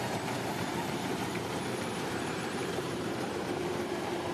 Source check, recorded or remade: remade